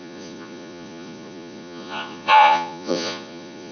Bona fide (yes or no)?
no